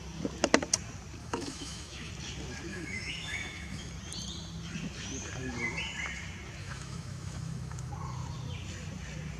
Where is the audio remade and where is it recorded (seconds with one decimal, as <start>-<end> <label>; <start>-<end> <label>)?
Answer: 0.0-1.2 recorded; 1.2-2.1 remade; 2.1-2.7 recorded; 2.7-3.9 remade; 3.9-6.6 recorded; 6.6-7.9 remade; 7.9-9.4 recorded